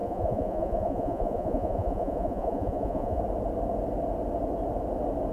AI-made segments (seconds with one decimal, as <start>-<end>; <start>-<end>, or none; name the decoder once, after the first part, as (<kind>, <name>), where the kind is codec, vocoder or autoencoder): 0.0-3.2 (vocoder, Vocos)